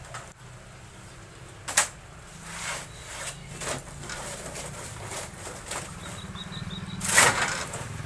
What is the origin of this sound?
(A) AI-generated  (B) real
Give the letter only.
B